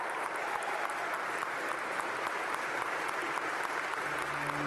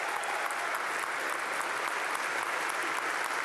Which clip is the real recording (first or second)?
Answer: second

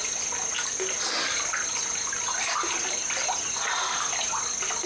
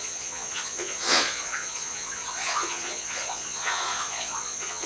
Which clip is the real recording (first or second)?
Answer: first